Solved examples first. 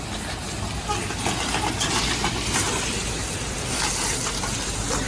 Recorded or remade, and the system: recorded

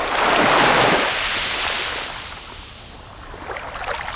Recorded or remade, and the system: recorded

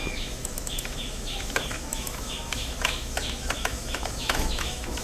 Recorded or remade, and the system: remade, autoencoder, DAC-VAE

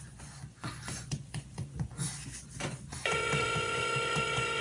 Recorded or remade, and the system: remade, vocoder, Vocos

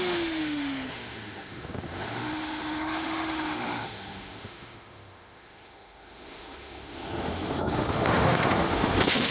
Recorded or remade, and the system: remade, autoencoder, DAC-VAE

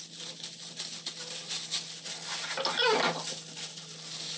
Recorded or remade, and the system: recorded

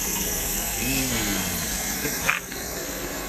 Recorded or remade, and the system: remade, codec, SNAC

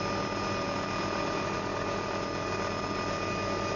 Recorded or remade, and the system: recorded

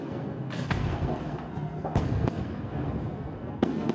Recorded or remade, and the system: remade, codec, SNAC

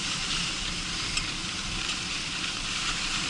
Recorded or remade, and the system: remade, vocoder, BigVGAN v2